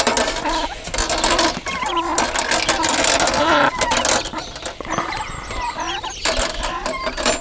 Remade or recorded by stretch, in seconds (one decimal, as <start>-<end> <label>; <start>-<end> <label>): 0.0-7.4 recorded